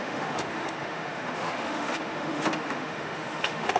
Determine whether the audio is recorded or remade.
remade